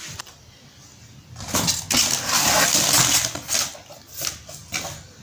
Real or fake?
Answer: real